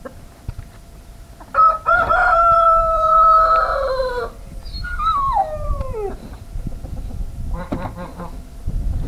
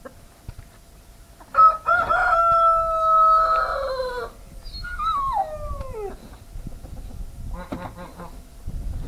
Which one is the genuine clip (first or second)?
second